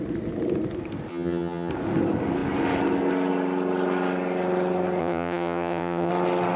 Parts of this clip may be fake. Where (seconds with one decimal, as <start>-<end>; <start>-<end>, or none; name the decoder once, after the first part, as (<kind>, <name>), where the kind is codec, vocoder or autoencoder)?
1.1-1.7 (vocoder, HiFi-GAN); 5.0-6.1